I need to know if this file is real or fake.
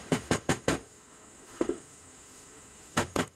fake